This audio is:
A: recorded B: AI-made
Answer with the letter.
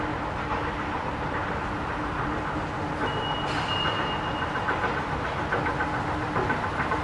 A